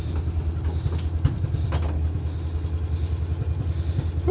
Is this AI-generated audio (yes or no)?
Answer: no